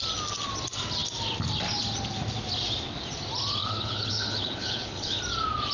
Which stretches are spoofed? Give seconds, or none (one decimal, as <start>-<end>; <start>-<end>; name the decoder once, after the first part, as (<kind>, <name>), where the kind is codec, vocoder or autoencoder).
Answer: 3.6-5.2 (codec, HILCodec)